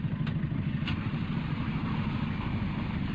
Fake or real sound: real